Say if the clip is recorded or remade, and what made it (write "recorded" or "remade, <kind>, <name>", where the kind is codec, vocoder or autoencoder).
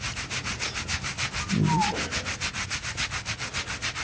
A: recorded